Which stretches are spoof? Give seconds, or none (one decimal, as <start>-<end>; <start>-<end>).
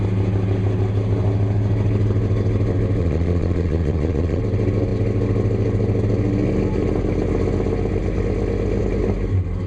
3.0-4.4